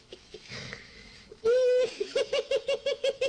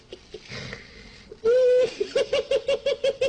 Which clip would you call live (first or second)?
second